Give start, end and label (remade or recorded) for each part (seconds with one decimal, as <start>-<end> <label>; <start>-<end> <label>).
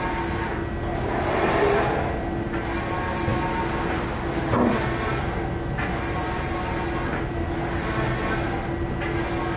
0.0-9.6 recorded